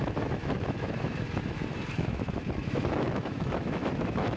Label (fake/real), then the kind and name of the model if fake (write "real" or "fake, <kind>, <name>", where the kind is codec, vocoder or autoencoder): fake, autoencoder, DAC-VAE